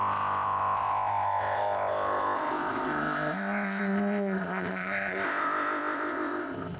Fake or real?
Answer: fake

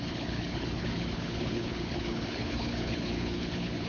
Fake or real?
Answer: fake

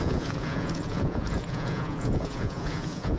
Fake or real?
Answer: fake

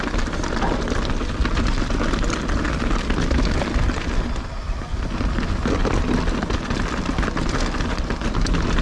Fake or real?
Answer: real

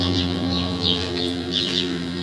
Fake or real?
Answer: fake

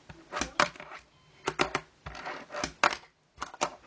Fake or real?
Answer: real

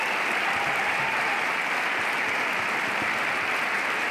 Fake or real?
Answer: real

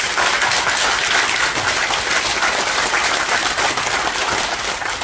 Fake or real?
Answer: real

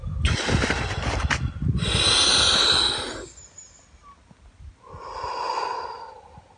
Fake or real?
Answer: real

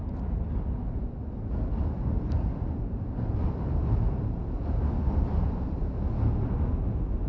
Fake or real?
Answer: real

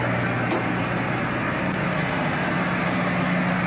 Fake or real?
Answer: real